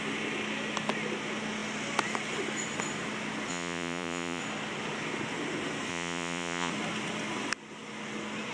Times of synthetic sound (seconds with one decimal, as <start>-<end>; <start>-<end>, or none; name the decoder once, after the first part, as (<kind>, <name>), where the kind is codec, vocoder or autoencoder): 3.5-4.4 (vocoder, Vocos); 5.9-6.7